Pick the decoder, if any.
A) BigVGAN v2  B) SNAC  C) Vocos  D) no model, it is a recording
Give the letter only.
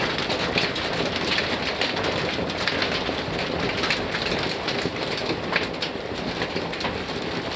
D